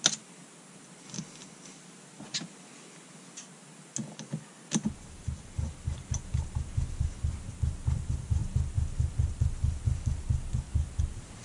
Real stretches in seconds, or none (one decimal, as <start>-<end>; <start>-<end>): 0.0-11.4